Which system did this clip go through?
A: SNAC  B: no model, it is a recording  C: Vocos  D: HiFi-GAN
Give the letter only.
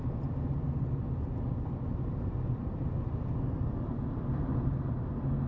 B